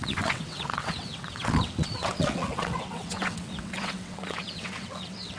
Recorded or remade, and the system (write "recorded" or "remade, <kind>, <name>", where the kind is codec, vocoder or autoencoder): remade, vocoder, WaveNeXt